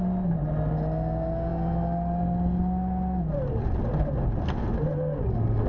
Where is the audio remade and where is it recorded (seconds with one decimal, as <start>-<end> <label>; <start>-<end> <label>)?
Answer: 0.0-5.7 recorded